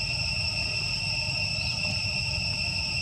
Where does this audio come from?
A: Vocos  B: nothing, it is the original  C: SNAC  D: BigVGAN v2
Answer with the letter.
D